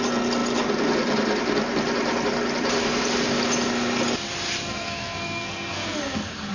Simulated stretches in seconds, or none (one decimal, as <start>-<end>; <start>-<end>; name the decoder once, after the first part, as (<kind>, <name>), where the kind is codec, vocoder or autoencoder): 4.7-6.5 (codec, SNAC)